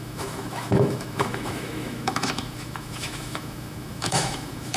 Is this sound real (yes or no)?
no